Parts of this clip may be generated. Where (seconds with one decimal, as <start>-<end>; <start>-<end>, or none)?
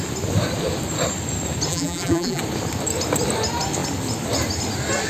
1.7-2.4